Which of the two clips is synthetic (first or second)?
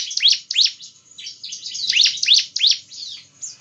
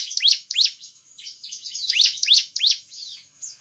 second